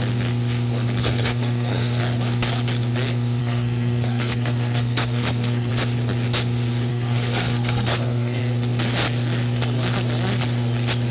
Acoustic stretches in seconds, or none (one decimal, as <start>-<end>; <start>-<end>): 0.0-1.0; 2.0-3.4; 5.7-6.9; 8.4-11.1